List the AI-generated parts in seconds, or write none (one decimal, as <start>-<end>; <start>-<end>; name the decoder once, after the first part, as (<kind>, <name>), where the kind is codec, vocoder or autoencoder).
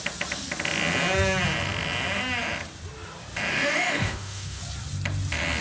3.5-4.6 (autoencoder, DAC-VAE)